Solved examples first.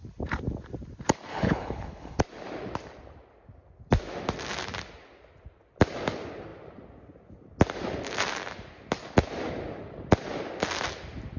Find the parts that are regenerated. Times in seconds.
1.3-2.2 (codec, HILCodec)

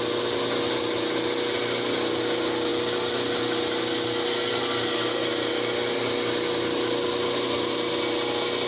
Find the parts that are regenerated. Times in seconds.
none

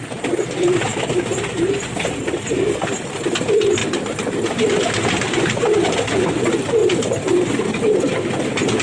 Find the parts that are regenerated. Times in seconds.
0.9-3.0 (vocoder, BigVGAN v2); 3.8-4.6; 6.8-7.5

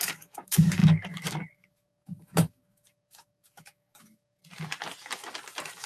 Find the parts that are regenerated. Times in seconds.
0.0-4.4 (codec, DAC)

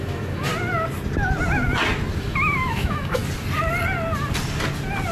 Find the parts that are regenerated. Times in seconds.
0.0-0.5 (autoencoder, DAC-VAE); 2.2-3.2

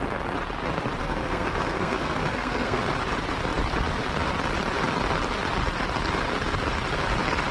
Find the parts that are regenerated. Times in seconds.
1.0-2.8 (codec, SNAC)